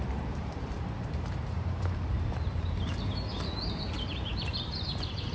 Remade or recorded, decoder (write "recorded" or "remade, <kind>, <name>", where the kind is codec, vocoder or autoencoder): remade, vocoder, BigVGAN v2